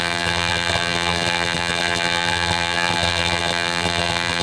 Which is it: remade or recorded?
remade